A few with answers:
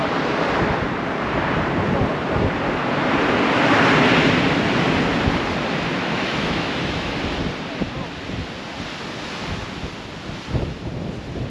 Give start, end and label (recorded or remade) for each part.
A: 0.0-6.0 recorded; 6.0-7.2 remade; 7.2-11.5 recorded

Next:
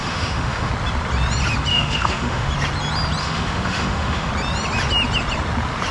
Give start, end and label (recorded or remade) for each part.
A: 0.0-0.7 remade; 0.7-1.7 recorded; 1.7-2.5 remade; 2.5-3.2 recorded; 3.2-4.3 remade; 4.3-5.9 recorded

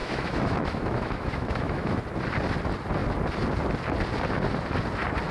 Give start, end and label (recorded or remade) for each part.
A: 0.0-2.0 remade; 2.0-5.3 recorded

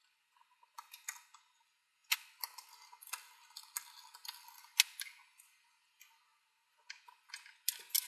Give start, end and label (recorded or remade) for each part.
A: 0.0-8.1 recorded

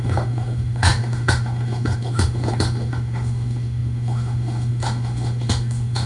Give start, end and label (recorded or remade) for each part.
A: 0.0-6.1 remade